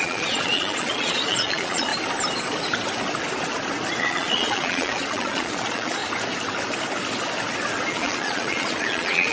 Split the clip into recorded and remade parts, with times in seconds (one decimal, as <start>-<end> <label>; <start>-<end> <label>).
0.0-1.9 remade; 1.9-4.0 recorded; 4.0-6.0 remade; 6.0-7.9 recorded; 7.9-9.3 remade